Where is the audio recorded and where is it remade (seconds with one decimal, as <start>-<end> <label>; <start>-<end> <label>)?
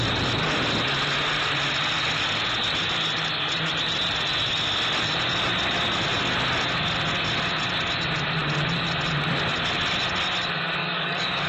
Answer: 0.0-10.8 recorded; 10.8-11.5 remade